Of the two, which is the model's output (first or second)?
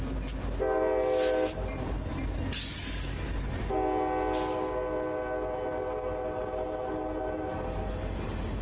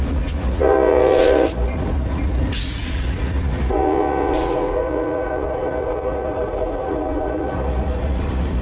second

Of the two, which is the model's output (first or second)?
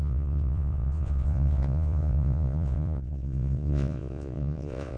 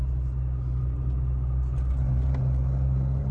first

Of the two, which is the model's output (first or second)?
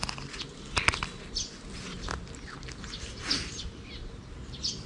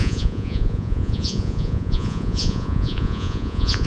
second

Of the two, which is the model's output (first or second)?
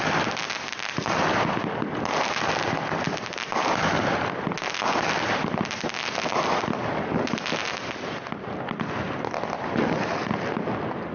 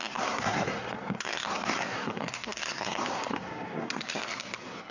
second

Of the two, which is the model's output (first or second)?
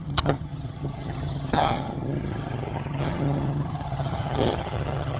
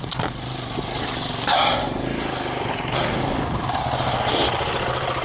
first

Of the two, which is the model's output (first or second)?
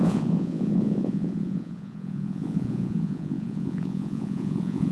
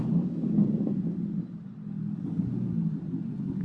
first